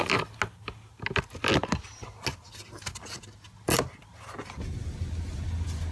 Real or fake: real